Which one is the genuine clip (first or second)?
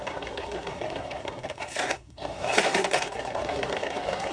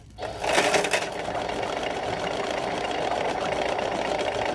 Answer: second